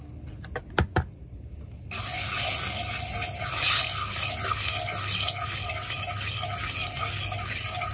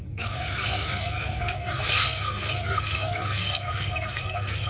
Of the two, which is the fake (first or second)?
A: second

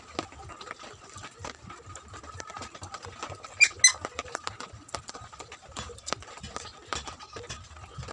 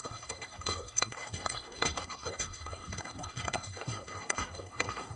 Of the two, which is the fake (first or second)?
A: second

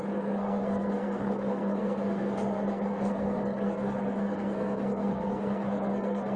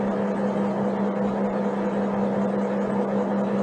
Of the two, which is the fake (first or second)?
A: first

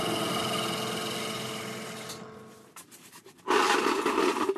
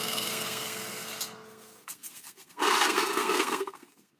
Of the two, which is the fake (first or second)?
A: second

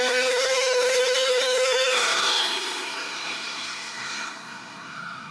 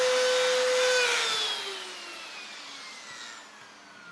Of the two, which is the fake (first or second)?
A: first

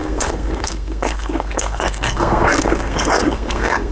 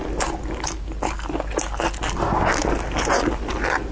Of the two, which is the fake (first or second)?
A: first